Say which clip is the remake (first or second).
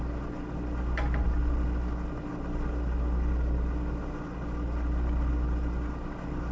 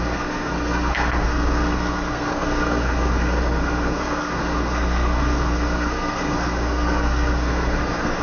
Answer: second